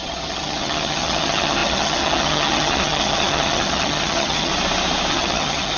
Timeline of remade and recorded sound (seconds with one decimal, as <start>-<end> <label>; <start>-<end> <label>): 0.0-4.5 remade; 4.5-5.1 recorded; 5.1-5.8 remade